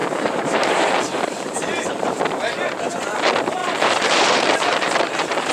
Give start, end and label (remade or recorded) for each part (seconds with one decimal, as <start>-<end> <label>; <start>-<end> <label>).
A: 0.0-2.2 remade; 2.2-3.6 recorded; 3.6-5.5 remade